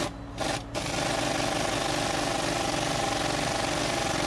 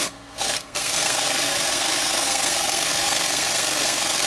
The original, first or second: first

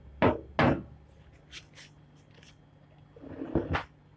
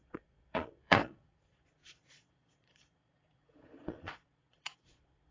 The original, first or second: first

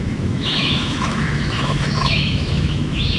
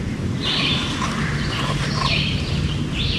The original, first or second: second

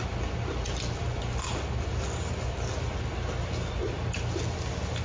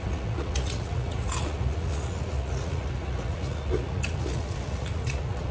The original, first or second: first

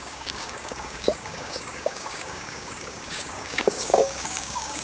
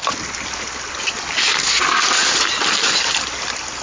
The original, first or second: second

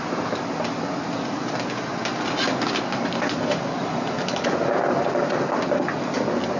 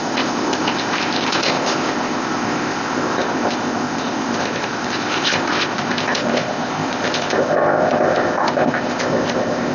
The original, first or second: first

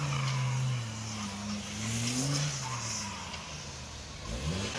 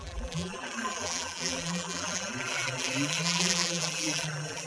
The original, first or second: first